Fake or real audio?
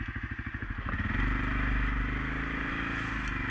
real